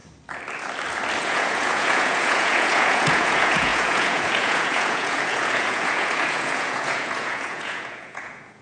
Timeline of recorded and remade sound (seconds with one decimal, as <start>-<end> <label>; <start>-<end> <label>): 0.0-1.2 recorded; 1.2-8.6 remade